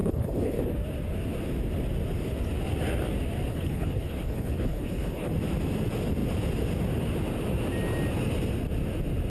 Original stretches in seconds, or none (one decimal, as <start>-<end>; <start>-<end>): 0.6-3.5; 5.3-9.3